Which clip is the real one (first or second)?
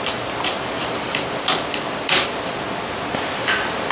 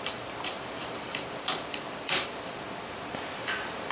first